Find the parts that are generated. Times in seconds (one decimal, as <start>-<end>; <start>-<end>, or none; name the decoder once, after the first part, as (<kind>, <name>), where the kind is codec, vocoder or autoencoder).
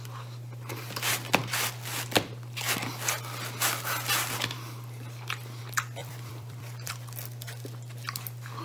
6.0-6.9 (vocoder, BigVGAN v2)